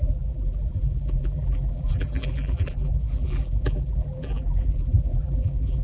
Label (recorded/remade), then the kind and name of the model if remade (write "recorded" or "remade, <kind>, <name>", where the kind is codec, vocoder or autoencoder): remade, vocoder, BigVGAN v2